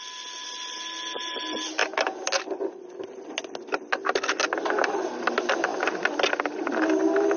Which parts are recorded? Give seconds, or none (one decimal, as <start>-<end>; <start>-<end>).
0.0-7.4